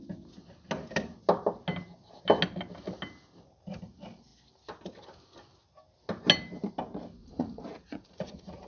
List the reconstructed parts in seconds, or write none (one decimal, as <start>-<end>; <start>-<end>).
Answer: 7.2-8.7